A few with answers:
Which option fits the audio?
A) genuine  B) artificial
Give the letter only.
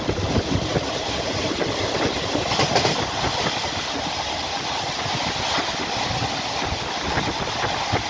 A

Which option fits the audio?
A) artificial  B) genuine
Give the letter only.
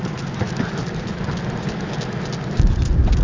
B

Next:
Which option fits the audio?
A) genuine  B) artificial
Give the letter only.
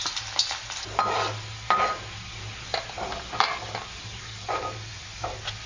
A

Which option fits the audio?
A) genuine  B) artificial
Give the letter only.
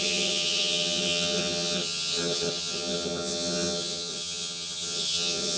B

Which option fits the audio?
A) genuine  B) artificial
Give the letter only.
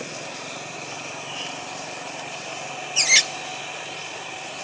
A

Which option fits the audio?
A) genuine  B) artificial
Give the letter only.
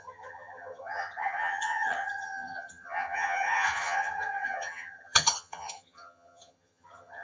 B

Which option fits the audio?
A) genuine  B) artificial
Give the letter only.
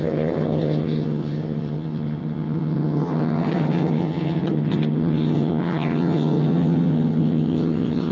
B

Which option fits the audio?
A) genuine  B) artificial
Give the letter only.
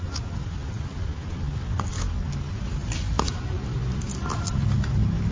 A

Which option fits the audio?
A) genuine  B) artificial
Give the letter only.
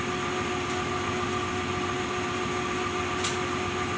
A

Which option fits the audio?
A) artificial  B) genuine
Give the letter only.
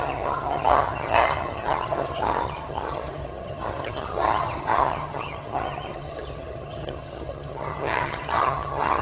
A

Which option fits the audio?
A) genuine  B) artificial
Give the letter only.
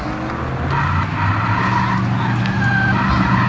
A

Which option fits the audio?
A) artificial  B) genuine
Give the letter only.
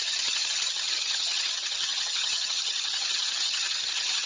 A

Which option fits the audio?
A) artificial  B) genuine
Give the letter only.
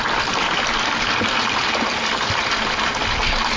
B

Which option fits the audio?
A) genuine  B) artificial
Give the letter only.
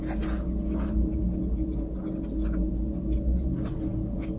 A